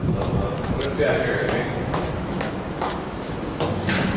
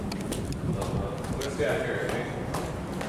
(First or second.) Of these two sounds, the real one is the second